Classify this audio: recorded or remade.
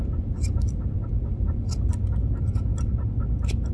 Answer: recorded